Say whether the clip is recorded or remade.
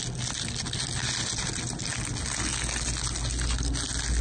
recorded